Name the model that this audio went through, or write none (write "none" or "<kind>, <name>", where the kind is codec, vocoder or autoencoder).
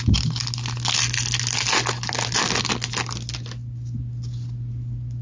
none